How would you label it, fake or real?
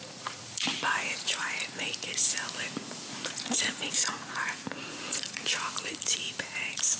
fake